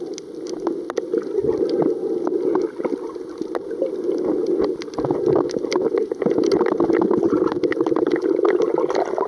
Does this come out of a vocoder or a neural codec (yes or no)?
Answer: no